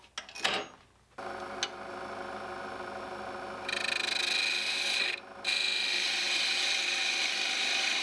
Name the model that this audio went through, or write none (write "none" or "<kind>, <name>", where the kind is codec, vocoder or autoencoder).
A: none